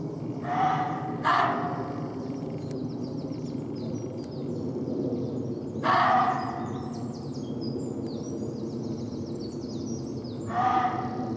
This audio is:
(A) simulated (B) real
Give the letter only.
B